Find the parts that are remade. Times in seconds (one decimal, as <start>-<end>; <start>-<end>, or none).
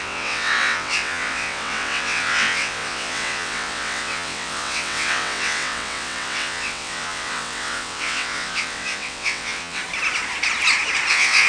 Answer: 0.0-9.8; 11.1-11.5